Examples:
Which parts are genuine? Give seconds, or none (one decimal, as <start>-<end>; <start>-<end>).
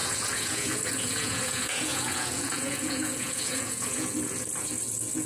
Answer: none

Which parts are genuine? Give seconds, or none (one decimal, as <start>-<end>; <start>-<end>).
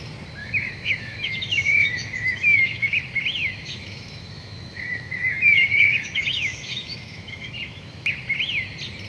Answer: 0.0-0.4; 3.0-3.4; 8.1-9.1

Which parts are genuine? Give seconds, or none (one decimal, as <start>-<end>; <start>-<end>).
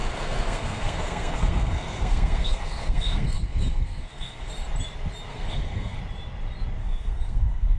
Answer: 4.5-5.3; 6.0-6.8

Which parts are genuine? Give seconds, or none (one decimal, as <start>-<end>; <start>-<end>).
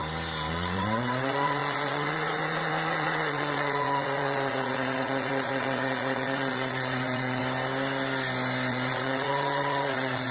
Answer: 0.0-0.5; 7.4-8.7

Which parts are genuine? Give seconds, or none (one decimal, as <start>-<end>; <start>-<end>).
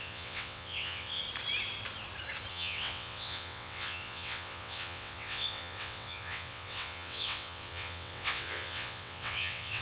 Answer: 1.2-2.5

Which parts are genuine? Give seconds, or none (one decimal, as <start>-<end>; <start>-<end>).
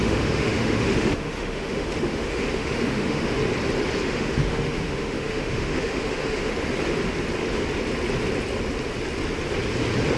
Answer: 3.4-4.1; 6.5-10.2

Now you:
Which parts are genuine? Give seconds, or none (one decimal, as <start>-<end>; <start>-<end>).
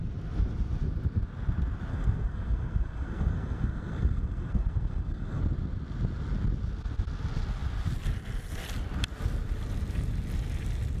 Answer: 0.0-1.9; 5.4-11.0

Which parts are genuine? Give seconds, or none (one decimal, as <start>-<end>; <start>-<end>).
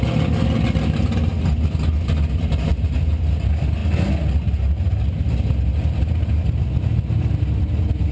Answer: 0.0-8.1